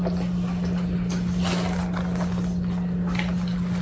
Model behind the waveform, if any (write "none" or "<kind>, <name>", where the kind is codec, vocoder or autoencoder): none